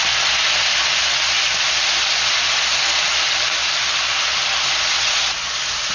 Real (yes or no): yes